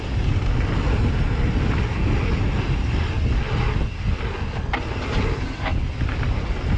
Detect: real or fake real